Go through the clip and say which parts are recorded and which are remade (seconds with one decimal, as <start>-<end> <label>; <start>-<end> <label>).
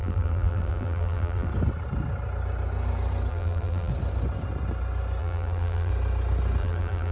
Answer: 0.0-1.5 remade; 1.5-3.3 recorded; 3.3-3.9 remade; 3.9-5.2 recorded; 5.2-5.9 remade; 5.9-6.6 recorded; 6.6-7.1 remade